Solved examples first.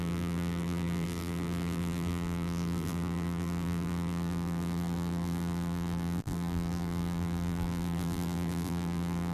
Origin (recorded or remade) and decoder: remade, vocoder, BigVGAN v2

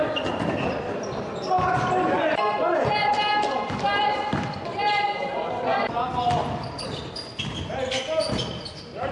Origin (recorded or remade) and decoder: recorded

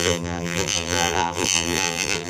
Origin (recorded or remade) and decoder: remade, vocoder, BigVGAN v2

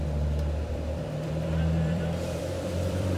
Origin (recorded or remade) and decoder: remade, vocoder, BigVGAN v2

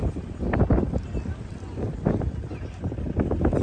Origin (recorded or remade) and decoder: recorded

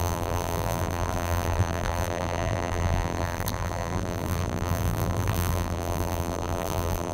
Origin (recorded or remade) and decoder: remade, vocoder, BigVGAN v2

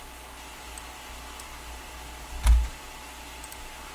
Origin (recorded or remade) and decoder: recorded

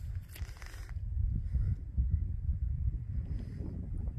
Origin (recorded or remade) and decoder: recorded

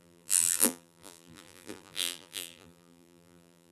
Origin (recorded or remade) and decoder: remade, vocoder, BigVGAN v2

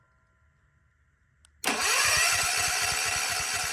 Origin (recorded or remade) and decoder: recorded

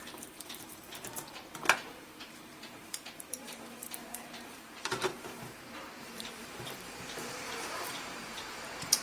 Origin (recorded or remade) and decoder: remade, vocoder, BigVGAN v2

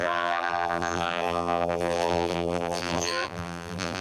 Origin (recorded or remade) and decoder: remade, vocoder, BigVGAN v2